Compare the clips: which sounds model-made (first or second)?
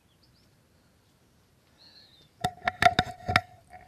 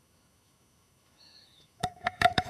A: second